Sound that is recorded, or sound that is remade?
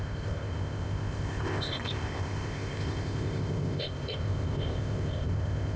remade